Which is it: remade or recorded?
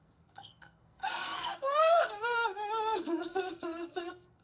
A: remade